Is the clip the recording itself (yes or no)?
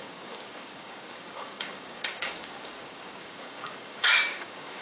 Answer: no